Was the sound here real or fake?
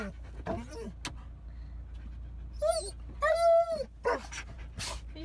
real